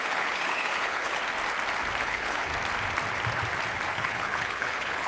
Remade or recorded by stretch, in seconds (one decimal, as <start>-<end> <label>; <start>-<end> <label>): 0.0-1.2 remade; 1.2-2.0 recorded; 2.0-2.5 remade; 2.5-3.9 recorded; 3.9-5.1 remade